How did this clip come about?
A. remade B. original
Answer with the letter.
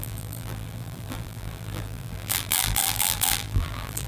A